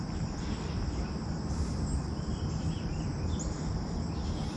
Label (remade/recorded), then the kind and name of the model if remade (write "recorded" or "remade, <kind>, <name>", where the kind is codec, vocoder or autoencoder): recorded